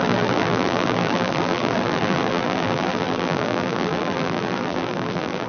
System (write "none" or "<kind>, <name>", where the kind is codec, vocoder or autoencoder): vocoder, BigVGAN v2